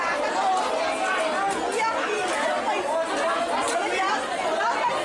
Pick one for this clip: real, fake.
real